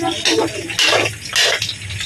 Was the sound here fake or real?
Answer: real